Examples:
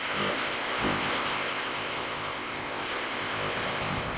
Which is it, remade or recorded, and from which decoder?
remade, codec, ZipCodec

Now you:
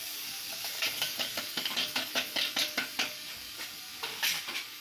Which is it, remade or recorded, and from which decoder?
remade, codec, DAC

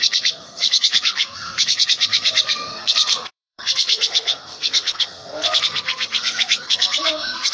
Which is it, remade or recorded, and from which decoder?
remade, codec, SNAC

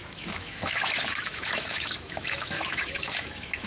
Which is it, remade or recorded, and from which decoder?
remade, autoencoder, DAC-VAE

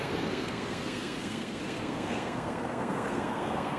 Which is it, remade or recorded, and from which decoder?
remade, codec, SNAC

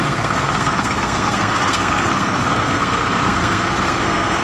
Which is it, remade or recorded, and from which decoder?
remade, codec, SNAC